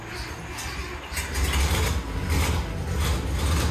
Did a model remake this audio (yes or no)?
no